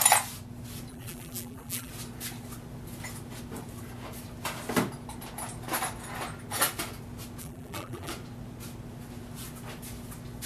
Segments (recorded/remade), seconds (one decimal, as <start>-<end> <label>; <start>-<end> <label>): 0.0-0.9 recorded; 0.9-1.9 remade; 1.9-7.4 recorded; 7.4-8.1 remade; 8.1-10.5 recorded